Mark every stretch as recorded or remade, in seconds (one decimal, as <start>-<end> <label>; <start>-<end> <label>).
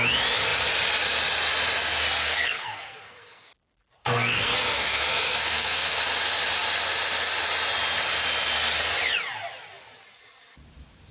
0.0-2.2 recorded; 2.2-3.5 remade; 3.5-4.0 recorded; 4.0-6.0 remade; 6.0-11.1 recorded